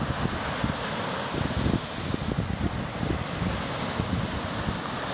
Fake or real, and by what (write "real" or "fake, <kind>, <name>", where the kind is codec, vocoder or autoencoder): real